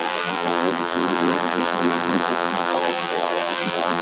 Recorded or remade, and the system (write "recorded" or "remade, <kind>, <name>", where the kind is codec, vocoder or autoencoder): remade, vocoder, BigVGAN v2